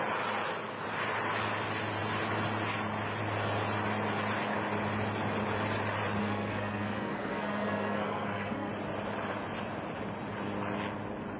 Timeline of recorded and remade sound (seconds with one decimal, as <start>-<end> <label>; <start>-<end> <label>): 0.0-6.2 recorded; 6.2-8.7 remade; 8.7-11.4 recorded

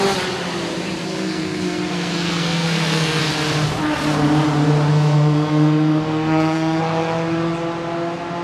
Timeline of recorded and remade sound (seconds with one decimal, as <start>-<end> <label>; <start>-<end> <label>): 0.0-1.0 recorded; 1.0-3.2 remade; 3.2-4.9 recorded; 4.9-6.8 remade; 6.8-8.4 recorded

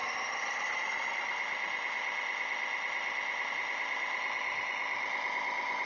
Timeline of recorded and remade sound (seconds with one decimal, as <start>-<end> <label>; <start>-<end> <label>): 0.0-5.9 recorded

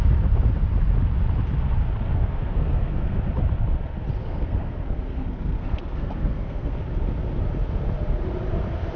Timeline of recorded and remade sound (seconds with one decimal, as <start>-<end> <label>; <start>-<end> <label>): 0.0-2.1 recorded; 2.1-3.2 remade; 3.2-4.2 recorded; 4.2-6.7 remade; 6.7-9.0 recorded